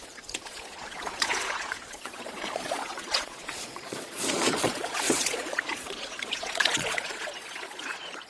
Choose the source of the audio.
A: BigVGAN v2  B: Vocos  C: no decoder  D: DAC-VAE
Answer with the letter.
B